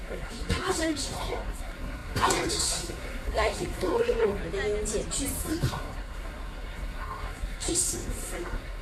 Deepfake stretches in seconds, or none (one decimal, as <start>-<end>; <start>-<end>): 0.0-4.4; 5.4-8.8